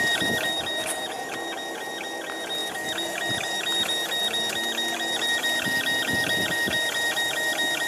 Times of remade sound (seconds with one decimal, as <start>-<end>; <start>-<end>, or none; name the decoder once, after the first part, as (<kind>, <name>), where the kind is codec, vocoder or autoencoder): none